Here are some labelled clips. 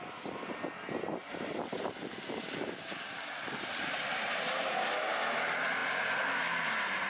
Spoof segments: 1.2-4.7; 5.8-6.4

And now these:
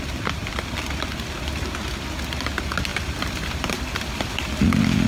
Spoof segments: 2.9-4.1

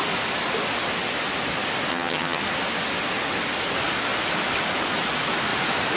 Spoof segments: 1.9-2.4

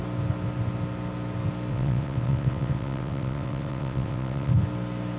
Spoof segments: 1.7-4.5